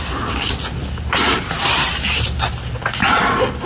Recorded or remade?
recorded